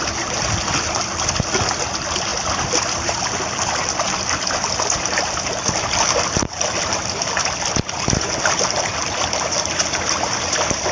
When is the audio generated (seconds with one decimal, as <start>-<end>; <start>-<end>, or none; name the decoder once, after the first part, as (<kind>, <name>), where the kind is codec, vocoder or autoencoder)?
none